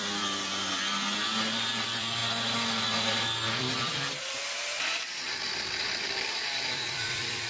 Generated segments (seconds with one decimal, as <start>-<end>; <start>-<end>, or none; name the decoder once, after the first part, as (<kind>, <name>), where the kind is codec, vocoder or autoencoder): 0.0-2.2 (vocoder, BigVGAN v2); 3.6-7.5